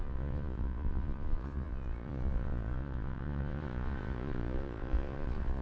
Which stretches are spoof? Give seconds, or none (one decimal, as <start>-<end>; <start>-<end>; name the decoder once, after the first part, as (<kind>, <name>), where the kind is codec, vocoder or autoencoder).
0.0-5.6 (vocoder, Vocos)